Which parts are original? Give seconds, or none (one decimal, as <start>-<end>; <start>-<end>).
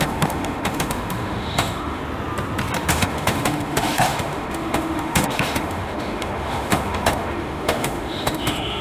2.0-2.9